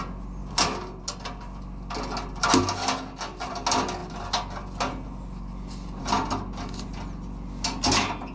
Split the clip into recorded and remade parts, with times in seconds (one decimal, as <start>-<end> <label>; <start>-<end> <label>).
0.0-0.4 recorded; 0.4-1.0 remade; 1.0-8.3 recorded